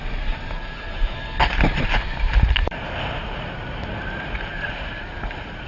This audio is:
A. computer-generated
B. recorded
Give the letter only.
B